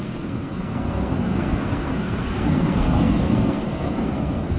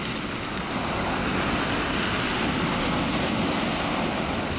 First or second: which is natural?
second